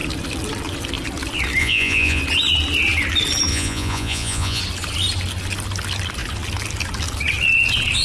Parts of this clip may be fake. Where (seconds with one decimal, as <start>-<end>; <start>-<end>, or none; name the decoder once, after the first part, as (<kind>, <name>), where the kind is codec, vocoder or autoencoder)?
1.6-2.2 (vocoder, Vocos); 3.5-4.6